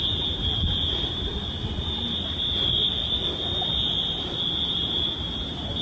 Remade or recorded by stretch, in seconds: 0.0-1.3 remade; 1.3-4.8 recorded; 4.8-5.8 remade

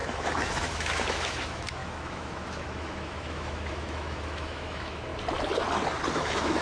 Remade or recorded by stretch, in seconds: 0.0-5.1 remade; 5.1-6.1 recorded; 6.1-6.6 remade

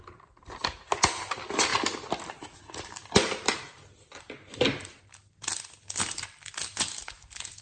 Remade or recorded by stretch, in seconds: 0.0-7.6 recorded

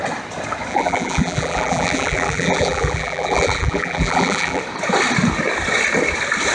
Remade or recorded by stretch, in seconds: 0.0-0.7 recorded; 0.7-4.6 remade; 4.6-6.5 recorded

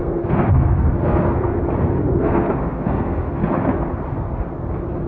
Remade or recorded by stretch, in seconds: 0.0-1.6 remade; 1.6-2.2 recorded; 2.2-3.4 remade; 3.4-5.1 recorded

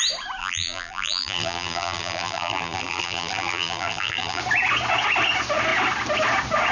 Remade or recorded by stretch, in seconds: 0.0-0.4 recorded; 0.4-4.4 remade; 4.4-6.7 recorded